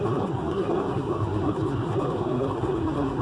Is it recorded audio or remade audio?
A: remade